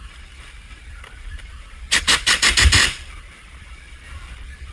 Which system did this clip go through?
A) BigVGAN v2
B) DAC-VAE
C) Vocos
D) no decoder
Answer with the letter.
A